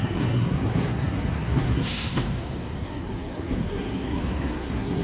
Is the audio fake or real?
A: fake